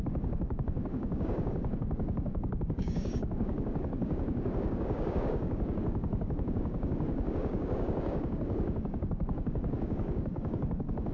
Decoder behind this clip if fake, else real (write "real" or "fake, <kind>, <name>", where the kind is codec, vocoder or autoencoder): fake, codec, DAC